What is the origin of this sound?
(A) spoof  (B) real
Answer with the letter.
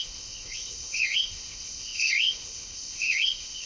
A